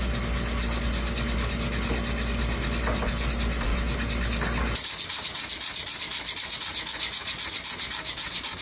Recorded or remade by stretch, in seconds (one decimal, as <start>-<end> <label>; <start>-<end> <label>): 0.0-8.6 recorded